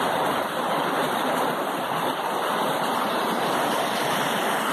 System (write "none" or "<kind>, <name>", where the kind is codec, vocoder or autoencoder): none